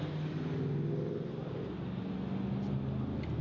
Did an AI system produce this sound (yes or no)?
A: no